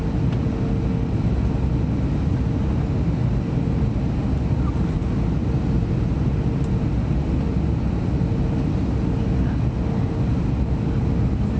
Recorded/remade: recorded